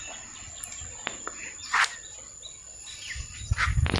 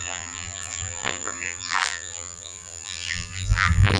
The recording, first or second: first